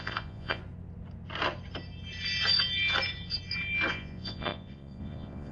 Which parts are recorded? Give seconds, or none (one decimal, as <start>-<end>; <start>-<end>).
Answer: 0.6-3.9